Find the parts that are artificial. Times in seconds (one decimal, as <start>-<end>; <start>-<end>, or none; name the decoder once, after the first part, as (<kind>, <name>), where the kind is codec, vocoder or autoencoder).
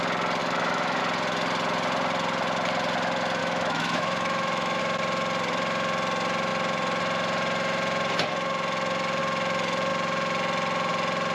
0.4-1.0 (autoencoder, DAC-VAE); 3.4-4.8